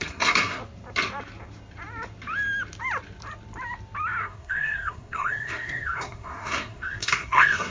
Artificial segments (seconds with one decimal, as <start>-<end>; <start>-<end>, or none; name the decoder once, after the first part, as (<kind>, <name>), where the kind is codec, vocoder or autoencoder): 0.0-0.6 (codec, SNAC); 4.2-7.7